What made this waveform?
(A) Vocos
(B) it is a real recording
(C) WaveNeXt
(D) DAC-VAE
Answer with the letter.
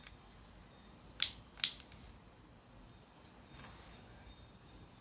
B